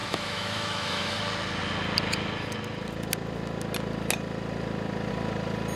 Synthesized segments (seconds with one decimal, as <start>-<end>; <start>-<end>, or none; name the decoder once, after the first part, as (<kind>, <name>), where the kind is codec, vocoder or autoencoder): 0.0-1.2 (autoencoder, DAC-VAE)